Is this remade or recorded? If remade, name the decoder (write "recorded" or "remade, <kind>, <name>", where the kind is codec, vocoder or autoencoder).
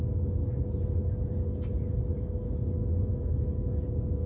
recorded